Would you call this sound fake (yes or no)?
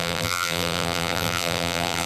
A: yes